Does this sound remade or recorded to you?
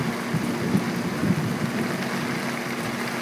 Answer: recorded